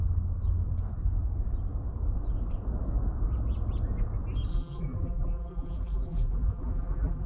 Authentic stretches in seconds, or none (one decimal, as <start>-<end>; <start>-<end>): 0.0-4.5